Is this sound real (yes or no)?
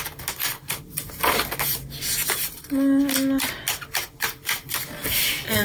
yes